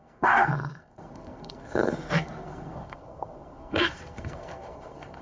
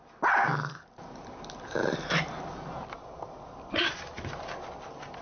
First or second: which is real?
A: second